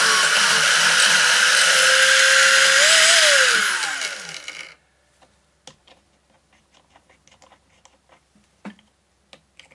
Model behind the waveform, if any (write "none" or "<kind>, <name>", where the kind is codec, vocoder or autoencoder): none